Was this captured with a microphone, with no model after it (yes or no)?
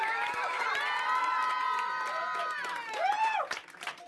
no